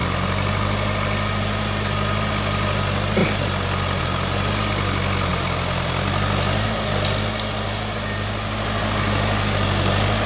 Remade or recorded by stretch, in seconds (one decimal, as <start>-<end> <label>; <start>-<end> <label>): 0.0-3.2 recorded; 3.2-4.0 remade; 4.0-5.3 recorded; 5.3-10.3 remade